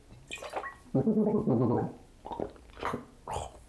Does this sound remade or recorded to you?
recorded